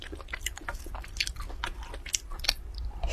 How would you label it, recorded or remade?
remade